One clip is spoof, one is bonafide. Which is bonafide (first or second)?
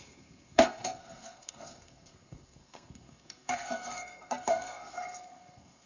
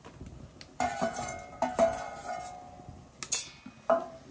second